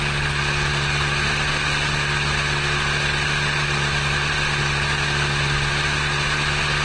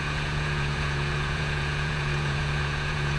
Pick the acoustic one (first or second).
first